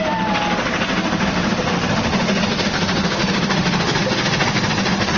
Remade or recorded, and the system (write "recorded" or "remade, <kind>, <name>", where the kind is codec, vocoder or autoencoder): recorded